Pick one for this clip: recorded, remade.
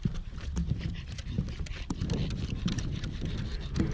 recorded